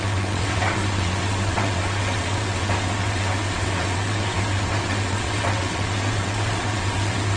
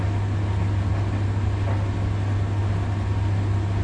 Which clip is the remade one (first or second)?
first